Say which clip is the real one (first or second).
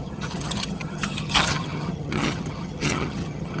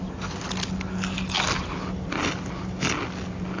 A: second